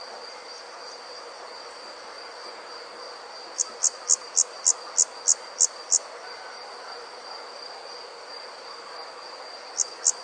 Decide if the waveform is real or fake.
real